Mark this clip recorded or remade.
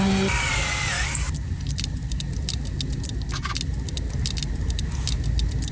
recorded